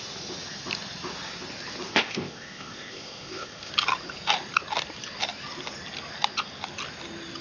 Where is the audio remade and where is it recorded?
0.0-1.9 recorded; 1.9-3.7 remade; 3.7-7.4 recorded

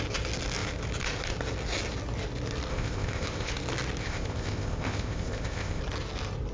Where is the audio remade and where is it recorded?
0.0-2.7 recorded; 2.7-3.5 remade; 3.5-4.0 recorded; 4.0-5.8 remade; 5.8-6.5 recorded